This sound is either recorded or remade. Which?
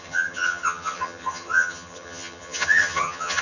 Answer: remade